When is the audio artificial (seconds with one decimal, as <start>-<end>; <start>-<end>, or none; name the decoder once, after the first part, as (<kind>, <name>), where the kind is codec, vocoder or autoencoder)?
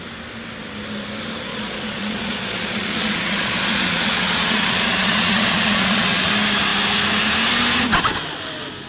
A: 1.5-6.3 (vocoder, Vocos)